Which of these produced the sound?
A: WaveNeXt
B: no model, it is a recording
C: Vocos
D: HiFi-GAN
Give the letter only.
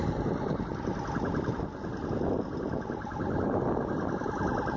B